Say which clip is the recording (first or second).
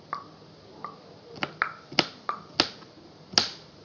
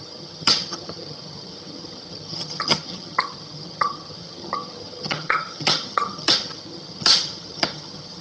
first